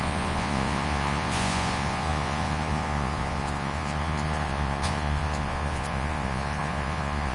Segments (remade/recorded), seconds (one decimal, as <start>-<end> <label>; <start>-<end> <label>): 0.0-7.3 remade